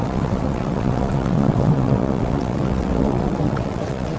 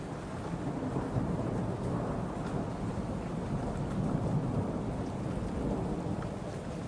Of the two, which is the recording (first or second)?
second